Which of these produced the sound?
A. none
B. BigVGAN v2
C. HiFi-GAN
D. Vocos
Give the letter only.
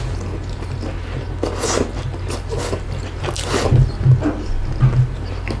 A